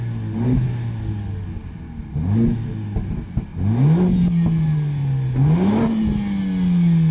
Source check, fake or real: real